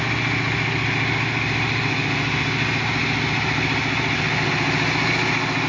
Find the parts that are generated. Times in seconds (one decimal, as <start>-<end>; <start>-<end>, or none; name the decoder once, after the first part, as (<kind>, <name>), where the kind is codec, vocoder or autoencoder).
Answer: none